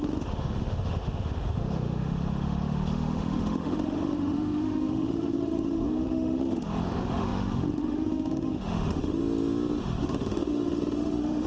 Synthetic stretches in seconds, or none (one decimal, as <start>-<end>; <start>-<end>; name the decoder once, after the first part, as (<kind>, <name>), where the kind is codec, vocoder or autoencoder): 0.0-9.2 (autoencoder, DAC-VAE); 9.8-11.5